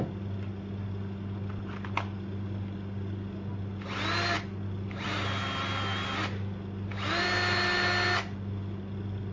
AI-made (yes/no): no